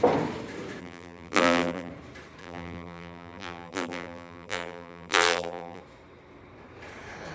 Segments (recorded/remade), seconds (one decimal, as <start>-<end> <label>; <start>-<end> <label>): 0.0-0.8 recorded; 0.8-1.9 remade; 1.9-2.4 recorded; 2.4-5.8 remade; 5.8-7.3 recorded